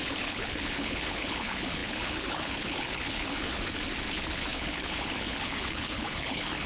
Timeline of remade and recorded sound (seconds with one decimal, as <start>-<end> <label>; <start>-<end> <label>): 0.0-3.5 remade; 3.5-4.1 recorded; 4.1-6.7 remade